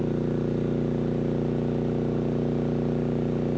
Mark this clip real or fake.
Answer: real